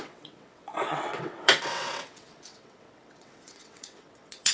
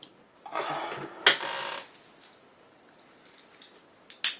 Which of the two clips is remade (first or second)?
first